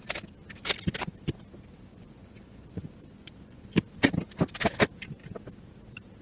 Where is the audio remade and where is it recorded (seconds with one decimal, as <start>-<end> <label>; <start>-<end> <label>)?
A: 0.0-1.9 recorded; 1.9-3.6 remade; 3.6-6.2 recorded